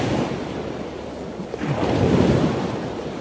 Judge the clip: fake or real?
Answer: fake